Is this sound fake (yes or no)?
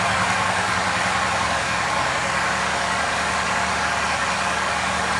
yes